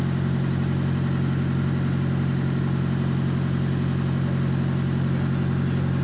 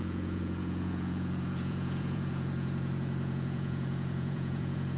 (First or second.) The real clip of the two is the first